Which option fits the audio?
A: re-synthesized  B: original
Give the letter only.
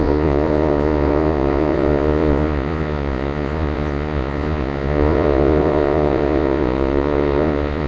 A